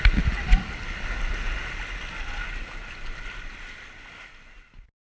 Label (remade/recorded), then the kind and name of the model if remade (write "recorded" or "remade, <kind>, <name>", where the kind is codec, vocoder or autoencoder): recorded